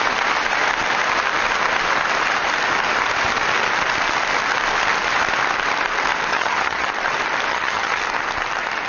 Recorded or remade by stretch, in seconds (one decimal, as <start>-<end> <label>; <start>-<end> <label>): 0.0-6.3 recorded; 6.3-6.9 remade; 6.9-7.5 recorded; 7.5-8.0 remade; 8.0-8.9 recorded